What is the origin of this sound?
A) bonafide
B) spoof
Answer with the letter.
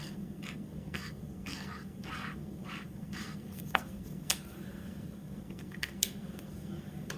B